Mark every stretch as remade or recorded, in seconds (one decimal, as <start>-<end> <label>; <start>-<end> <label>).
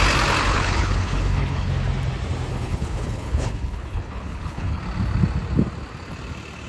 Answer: 0.0-0.5 recorded; 0.5-1.7 remade; 1.7-2.5 recorded; 2.5-4.8 remade; 4.8-6.7 recorded